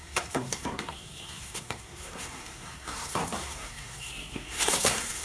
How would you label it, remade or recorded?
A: remade